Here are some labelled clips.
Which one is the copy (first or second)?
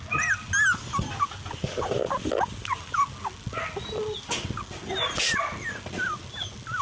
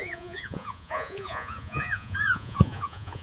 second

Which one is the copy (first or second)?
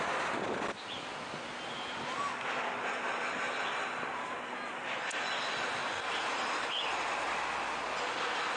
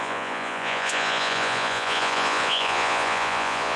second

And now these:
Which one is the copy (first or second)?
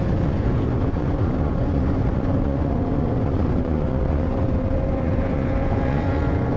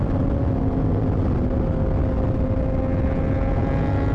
first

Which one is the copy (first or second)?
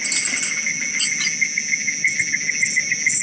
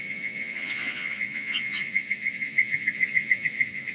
second